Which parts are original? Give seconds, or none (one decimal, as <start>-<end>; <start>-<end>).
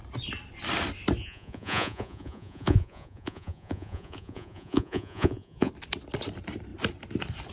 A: 0.0-1.2; 5.7-7.5